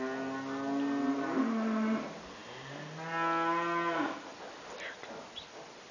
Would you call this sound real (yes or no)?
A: yes